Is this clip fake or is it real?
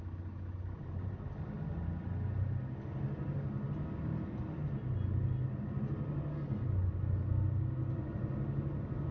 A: real